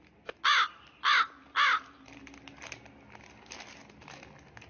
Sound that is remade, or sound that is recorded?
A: recorded